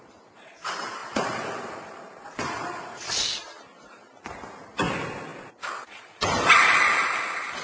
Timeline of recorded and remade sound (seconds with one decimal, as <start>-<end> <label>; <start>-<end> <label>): 0.0-5.3 remade; 5.3-5.9 recorded; 5.9-7.6 remade